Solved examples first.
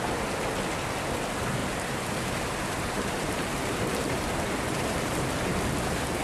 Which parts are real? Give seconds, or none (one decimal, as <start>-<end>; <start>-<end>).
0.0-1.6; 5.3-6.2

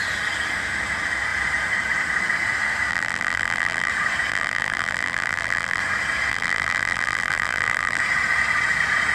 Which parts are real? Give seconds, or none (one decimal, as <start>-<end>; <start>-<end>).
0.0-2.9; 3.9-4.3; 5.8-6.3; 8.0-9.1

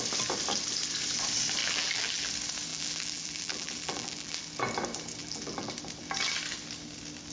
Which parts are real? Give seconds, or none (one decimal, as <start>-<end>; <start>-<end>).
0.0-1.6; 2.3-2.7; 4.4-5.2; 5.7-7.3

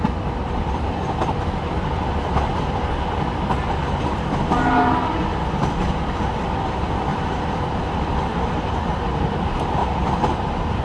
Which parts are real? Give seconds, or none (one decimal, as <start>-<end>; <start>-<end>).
0.0-7.1; 8.9-10.8

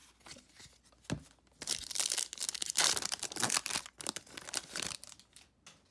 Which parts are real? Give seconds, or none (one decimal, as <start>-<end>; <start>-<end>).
0.0-5.9

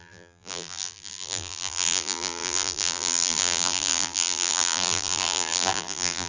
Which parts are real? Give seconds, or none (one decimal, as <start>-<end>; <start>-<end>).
none